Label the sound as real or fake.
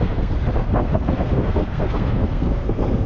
fake